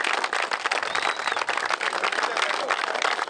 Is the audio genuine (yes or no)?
yes